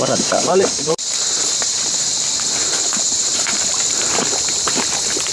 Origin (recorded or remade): remade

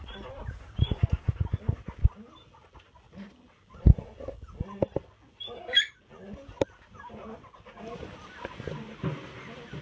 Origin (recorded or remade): recorded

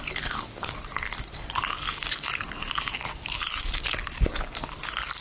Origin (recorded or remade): recorded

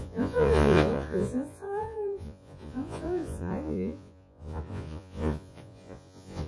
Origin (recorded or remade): remade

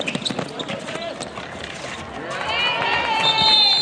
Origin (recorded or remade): recorded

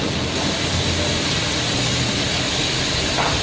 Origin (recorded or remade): recorded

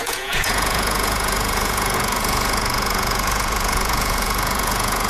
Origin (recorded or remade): remade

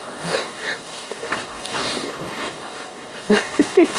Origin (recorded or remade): remade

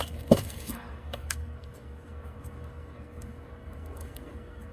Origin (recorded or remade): remade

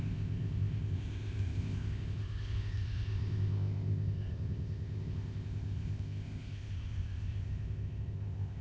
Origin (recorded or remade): remade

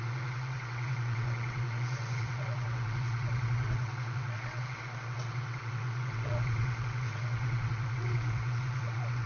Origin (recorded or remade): remade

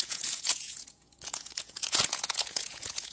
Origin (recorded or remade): remade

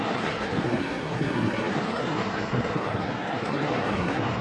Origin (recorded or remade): remade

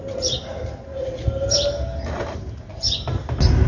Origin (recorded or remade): recorded